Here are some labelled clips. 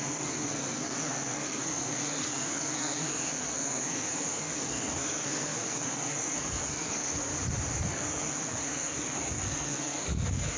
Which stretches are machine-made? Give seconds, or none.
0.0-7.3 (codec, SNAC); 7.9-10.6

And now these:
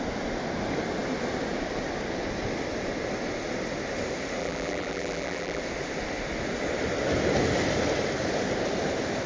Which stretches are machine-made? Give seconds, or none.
4.4-5.6 (vocoder, BigVGAN v2)

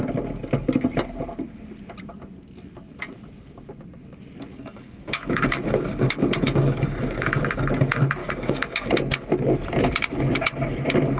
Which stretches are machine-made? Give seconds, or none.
4.5-7.4 (codec, DAC); 8.2-8.9

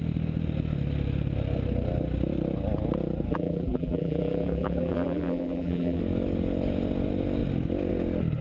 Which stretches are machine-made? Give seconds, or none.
3.3-6.0 (vocoder, BigVGAN v2)

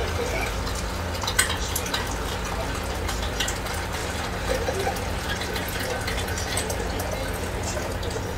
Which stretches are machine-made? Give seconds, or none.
0.0-0.5 (vocoder, BigVGAN v2); 4.0-5.3

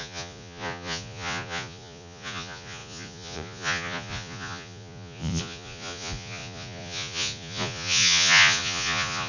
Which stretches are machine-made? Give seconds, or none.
0.0-9.3 (vocoder, Vocos)